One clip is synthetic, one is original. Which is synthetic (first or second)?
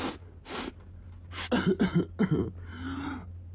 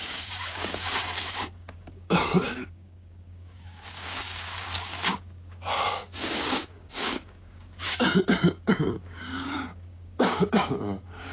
second